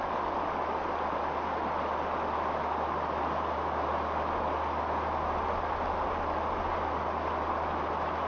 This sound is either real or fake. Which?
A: real